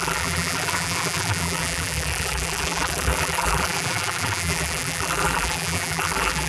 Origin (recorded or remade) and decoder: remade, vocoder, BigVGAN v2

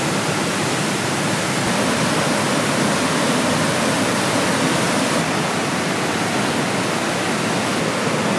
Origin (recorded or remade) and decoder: recorded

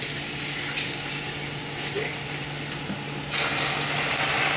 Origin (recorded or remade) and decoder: recorded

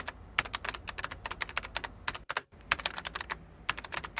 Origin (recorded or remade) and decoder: recorded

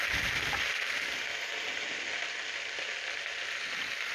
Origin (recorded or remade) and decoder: recorded